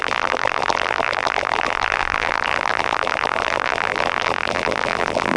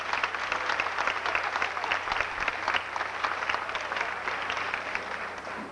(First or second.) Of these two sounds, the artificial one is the first